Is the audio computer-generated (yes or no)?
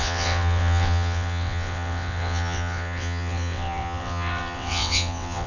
yes